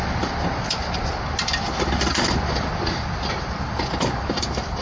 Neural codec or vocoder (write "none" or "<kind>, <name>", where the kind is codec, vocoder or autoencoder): none